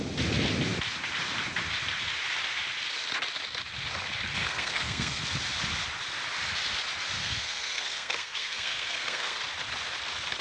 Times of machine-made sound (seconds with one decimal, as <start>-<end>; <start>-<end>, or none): 4.4-5.2; 7.2-9.4